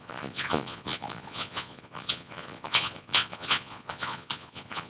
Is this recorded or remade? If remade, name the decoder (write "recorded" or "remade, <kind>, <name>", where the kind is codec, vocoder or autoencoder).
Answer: remade, vocoder, Vocos